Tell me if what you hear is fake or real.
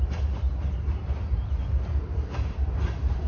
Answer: real